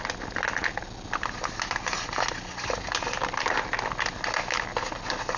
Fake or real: real